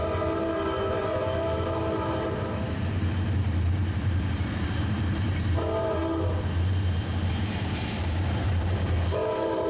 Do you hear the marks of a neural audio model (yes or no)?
yes